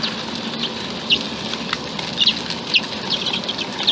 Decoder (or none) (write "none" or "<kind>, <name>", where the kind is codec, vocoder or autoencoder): none